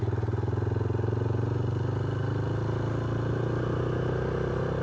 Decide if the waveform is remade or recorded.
recorded